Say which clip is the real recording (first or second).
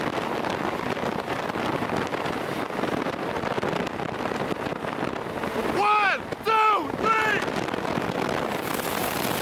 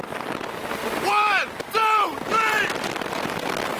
first